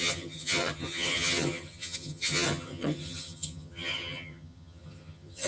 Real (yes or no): no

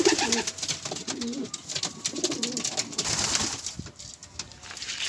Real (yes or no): yes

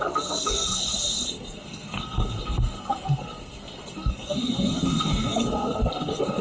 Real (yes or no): no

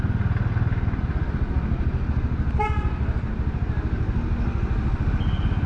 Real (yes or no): yes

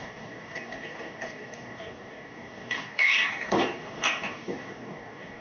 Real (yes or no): no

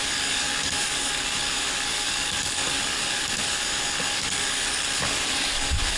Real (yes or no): no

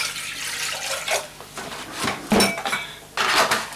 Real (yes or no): yes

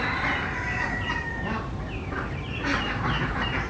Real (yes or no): no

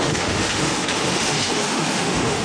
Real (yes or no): no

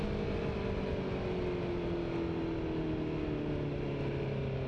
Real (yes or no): yes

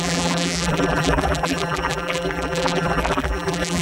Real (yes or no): no